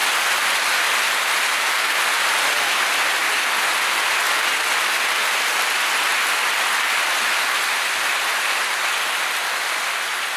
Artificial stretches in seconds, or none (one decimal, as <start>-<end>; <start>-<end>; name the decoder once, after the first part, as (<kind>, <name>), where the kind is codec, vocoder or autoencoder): none